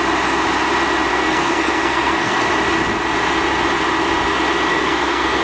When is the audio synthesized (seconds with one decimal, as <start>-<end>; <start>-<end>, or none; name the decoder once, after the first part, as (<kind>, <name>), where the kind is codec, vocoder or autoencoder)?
1.1-2.5 (codec, SNAC); 4.7-5.4